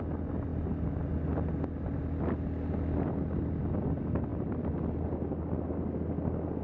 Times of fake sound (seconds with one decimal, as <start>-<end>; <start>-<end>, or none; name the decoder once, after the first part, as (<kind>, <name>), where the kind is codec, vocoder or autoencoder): 4.3-5.1 (vocoder, BigVGAN v2)

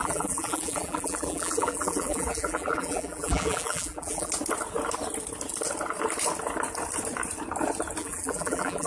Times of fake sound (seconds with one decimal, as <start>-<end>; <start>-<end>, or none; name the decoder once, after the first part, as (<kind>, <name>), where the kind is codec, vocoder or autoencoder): 0.0-4.3 (vocoder, BigVGAN v2); 8.0-8.9

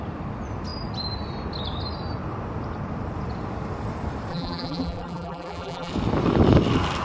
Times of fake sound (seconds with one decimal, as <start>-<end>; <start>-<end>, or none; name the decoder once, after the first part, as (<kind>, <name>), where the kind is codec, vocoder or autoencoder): 4.3-5.9 (vocoder, BigVGAN v2)

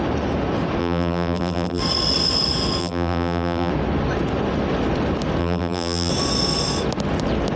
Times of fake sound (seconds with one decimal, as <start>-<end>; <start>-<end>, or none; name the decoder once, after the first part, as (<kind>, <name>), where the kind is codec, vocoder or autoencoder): 0.8-1.8 (vocoder, BigVGAN v2); 2.8-3.7; 5.4-6.1

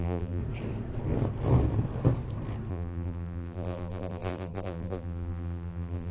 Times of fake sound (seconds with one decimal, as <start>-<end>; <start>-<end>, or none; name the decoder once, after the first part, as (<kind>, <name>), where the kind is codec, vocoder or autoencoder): 0.0-0.4 (vocoder, BigVGAN v2); 2.7-6.1

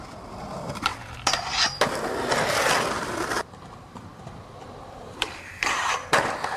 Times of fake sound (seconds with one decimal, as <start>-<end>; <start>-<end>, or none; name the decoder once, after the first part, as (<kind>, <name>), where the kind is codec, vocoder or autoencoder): 0.0-0.9 (vocoder, BigVGAN v2); 2.5-6.6

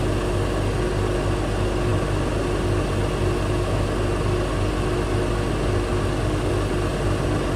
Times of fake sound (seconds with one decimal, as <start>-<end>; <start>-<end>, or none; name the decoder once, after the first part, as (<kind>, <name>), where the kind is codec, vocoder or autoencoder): none